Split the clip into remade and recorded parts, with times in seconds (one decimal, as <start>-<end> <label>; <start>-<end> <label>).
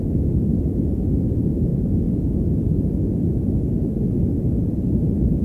0.0-5.4 recorded